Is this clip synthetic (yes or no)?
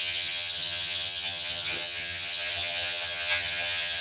yes